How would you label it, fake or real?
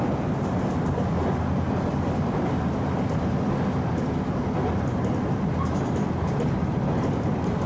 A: real